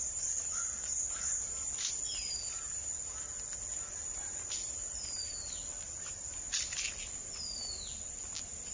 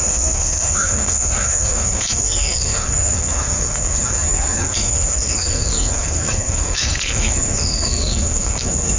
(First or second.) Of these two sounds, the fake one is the second